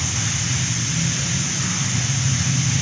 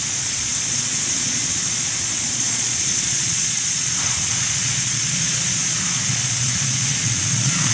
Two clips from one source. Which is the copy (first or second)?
second